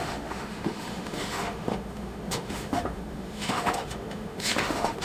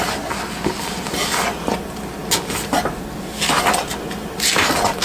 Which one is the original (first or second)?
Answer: second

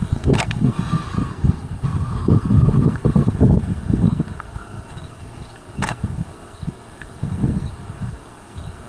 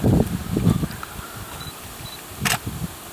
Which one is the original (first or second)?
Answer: second